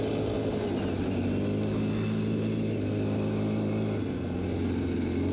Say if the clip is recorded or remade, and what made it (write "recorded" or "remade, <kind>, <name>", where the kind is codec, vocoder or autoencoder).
recorded